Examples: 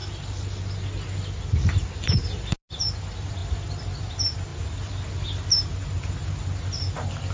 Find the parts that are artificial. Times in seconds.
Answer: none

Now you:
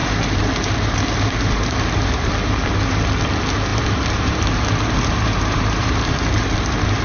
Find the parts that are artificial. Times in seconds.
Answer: 0.0-2.3; 3.7-6.0

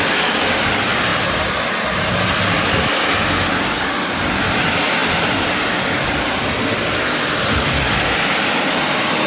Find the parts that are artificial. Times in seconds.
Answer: 5.0-6.7

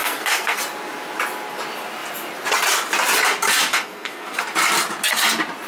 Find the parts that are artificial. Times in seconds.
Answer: 0.0-0.6; 3.7-4.4

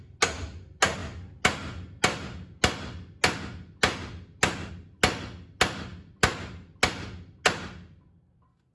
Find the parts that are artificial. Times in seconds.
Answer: none

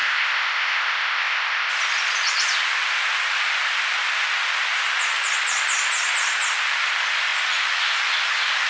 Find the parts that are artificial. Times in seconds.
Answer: 0.0-1.7